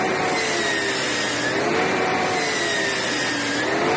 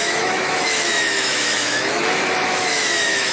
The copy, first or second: second